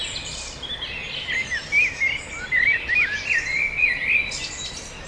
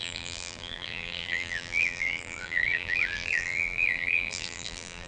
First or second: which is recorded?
first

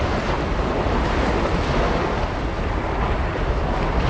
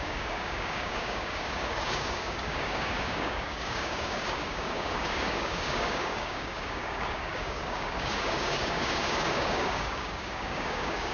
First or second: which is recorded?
first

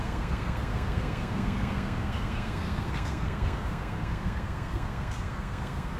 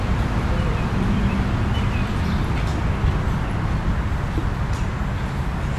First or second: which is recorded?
second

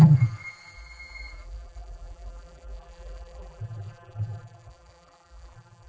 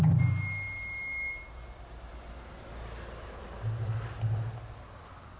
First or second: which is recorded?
second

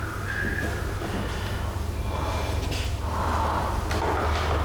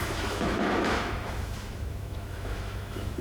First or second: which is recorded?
first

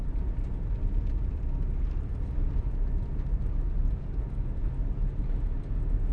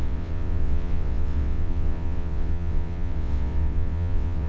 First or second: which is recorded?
first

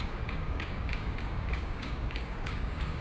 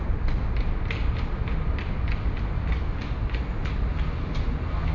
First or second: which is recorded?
second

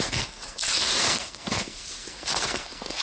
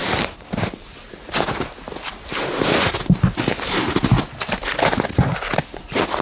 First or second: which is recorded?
second